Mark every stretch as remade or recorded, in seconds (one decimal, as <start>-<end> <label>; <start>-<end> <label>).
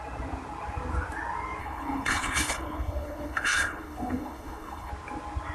0.0-1.6 recorded; 1.6-4.9 remade; 4.9-5.5 recorded